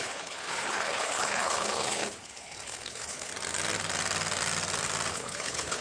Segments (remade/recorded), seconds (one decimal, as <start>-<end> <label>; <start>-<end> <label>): 0.0-3.3 remade; 3.3-5.1 recorded; 5.1-5.8 remade

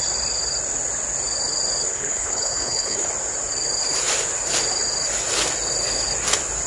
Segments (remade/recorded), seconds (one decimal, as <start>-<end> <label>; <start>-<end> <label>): 0.0-1.9 recorded; 1.9-3.1 remade; 3.1-6.7 recorded

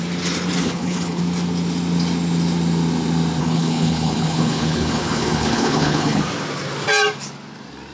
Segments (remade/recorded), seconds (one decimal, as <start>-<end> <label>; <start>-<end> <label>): 0.0-0.6 recorded; 0.6-1.2 remade; 1.2-3.4 recorded; 3.4-6.2 remade; 6.2-7.9 recorded

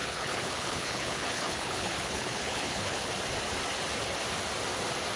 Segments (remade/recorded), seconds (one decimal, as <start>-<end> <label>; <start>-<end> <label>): 0.0-3.1 remade; 3.1-5.2 recorded